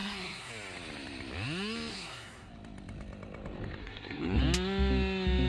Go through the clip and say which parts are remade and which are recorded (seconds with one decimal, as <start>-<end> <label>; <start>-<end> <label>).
0.0-0.5 remade; 0.5-1.9 recorded; 1.9-2.5 remade; 2.5-3.8 recorded; 3.8-4.4 remade; 4.4-5.5 recorded